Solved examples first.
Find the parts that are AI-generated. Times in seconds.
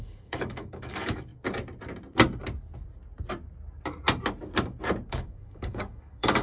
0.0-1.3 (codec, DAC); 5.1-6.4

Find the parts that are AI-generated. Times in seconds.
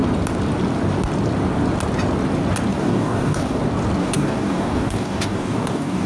2.7-3.6 (codec, DAC); 4.0-6.1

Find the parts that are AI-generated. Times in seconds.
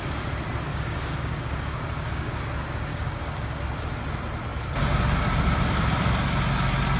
0.7-2.4 (codec, DAC); 2.9-3.6